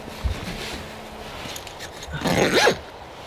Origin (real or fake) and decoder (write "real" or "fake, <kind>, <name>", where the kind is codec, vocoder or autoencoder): real